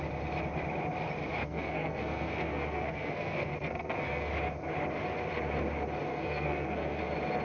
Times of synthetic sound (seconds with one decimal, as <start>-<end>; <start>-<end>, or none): 1.4-4.3; 6.1-7.0